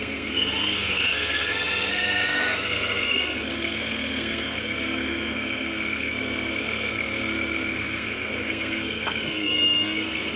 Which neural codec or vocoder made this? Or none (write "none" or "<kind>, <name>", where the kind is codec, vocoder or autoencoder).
codec, SNAC